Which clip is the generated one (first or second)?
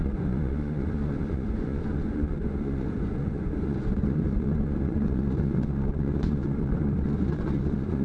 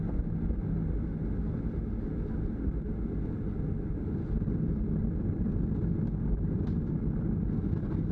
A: first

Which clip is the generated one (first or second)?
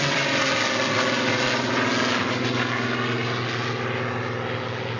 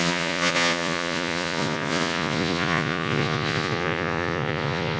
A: second